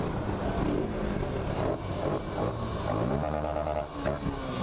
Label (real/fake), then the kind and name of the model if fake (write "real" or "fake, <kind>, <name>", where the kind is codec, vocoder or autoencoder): fake, vocoder, BigVGAN v2